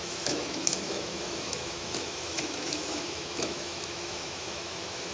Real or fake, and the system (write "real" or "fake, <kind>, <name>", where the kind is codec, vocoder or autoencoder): fake, autoencoder, DAC-VAE